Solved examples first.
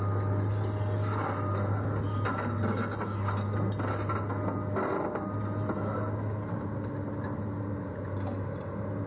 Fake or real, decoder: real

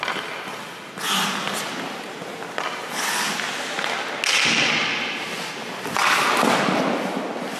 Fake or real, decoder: real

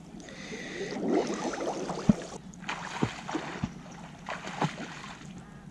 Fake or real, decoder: real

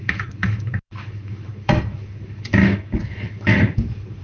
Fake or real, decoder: fake, autoencoder, DAC-VAE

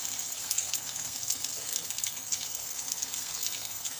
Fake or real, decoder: fake, codec, SNAC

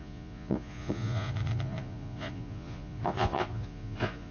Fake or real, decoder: fake, vocoder, Vocos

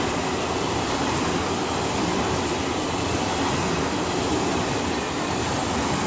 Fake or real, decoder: real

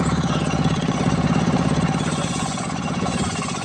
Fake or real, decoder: fake, vocoder, Vocos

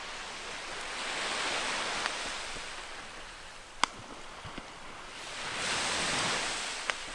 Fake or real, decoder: real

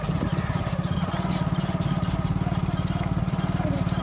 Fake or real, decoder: real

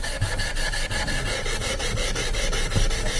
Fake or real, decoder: real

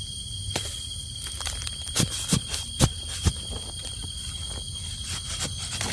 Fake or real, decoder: real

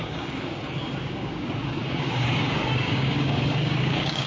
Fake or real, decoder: fake, codec, DAC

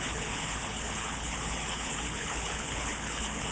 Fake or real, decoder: fake, codec, HILCodec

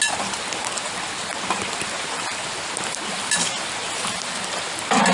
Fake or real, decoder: real